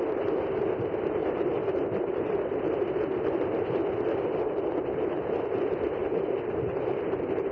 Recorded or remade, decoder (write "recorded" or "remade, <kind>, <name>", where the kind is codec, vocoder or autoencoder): recorded